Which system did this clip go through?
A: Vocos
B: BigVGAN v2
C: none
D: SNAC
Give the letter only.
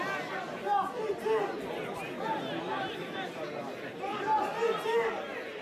C